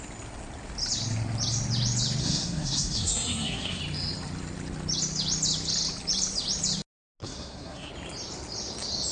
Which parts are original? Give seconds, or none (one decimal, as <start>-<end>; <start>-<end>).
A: 0.0-2.2; 3.8-7.2; 7.9-9.1